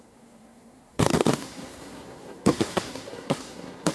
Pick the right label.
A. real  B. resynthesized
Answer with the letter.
B